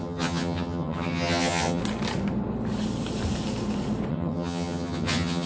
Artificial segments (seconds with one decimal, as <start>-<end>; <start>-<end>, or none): 0.0-1.8; 4.1-5.5